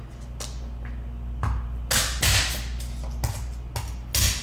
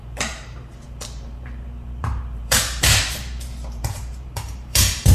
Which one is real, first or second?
first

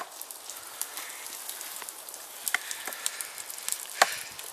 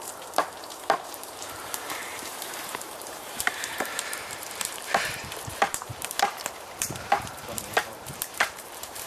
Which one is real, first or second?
first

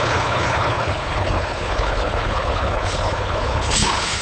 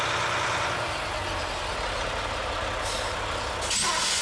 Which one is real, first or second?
second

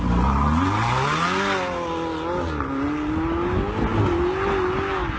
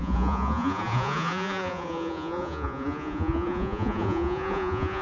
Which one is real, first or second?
first